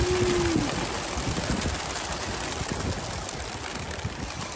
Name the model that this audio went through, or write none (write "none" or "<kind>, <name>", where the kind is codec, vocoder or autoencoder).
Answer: none